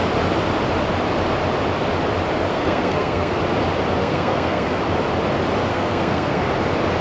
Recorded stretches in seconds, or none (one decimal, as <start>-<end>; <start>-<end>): 0.0-2.5; 3.4-4.0; 4.8-5.7; 6.5-7.0